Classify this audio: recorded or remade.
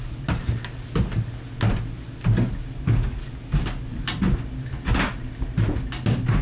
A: recorded